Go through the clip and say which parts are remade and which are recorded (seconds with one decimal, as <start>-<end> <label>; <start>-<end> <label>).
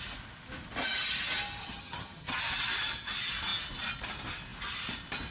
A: 0.0-1.6 recorded; 1.6-2.4 remade; 2.4-5.3 recorded